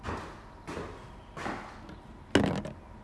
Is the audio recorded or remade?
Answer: recorded